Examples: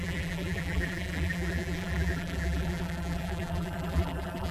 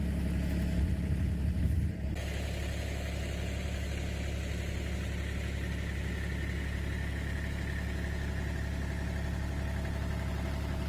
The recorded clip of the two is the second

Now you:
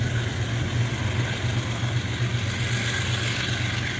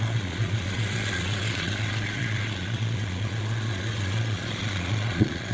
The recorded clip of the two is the first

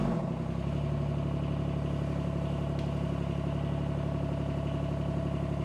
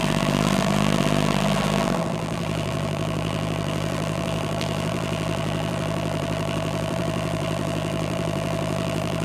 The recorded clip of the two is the first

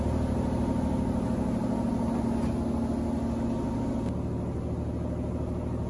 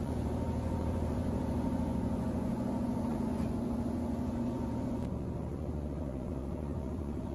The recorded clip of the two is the first